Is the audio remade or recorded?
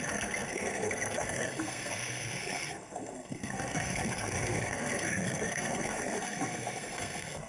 remade